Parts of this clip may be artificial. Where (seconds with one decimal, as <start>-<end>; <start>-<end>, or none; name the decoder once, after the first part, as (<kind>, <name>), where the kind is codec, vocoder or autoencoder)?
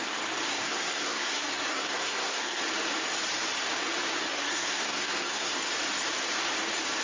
0.5-2.6 (codec, SNAC); 4.3-5.6